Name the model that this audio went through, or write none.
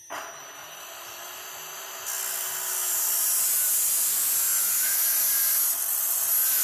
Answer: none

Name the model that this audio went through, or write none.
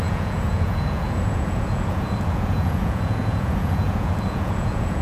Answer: vocoder, Vocos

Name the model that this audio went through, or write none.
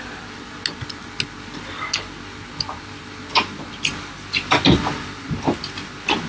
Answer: none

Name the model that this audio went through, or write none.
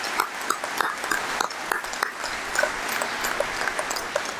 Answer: none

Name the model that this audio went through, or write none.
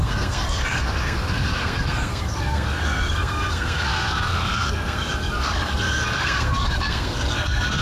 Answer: codec, SNAC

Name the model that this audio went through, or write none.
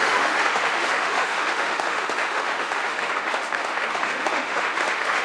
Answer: autoencoder, DAC-VAE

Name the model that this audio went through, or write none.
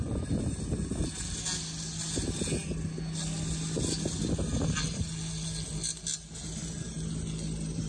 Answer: none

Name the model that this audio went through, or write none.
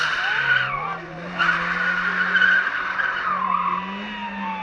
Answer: none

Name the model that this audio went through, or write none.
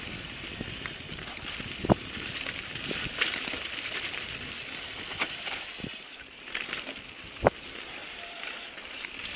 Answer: none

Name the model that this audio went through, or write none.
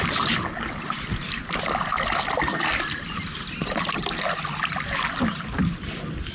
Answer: none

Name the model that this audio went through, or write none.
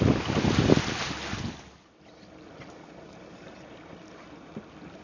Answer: none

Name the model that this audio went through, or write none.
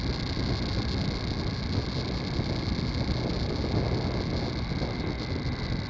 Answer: none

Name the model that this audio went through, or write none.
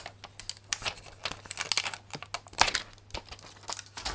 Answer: none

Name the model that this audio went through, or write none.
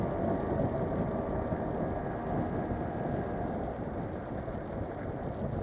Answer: none